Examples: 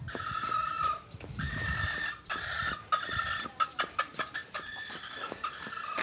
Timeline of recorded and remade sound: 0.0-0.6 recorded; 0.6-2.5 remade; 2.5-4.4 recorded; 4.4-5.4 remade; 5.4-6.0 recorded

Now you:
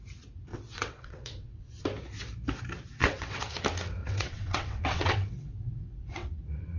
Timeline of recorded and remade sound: 0.0-0.5 recorded; 0.5-1.8 remade; 1.8-3.0 recorded; 3.0-3.5 remade; 3.5-4.0 recorded; 4.0-6.8 remade

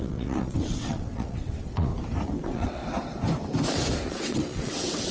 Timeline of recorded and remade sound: 0.0-1.9 remade; 1.9-2.4 recorded; 2.4-2.8 remade; 2.8-4.1 recorded; 4.1-5.1 remade

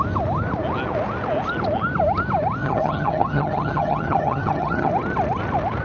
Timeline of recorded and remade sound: 0.0-2.6 recorded; 2.6-4.9 remade; 4.9-5.8 recorded

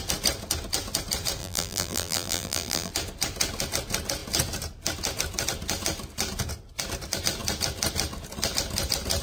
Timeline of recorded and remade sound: 0.0-1.4 recorded; 1.4-2.9 remade; 2.9-9.2 recorded